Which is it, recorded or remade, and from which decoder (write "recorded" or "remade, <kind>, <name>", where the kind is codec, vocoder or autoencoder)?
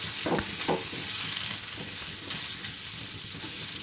recorded